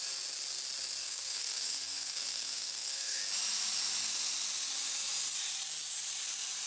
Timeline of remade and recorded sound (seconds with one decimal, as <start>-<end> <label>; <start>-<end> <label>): 0.0-1.0 recorded; 1.0-3.2 remade; 3.2-6.7 recorded